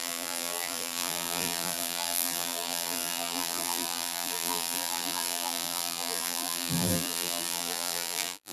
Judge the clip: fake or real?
fake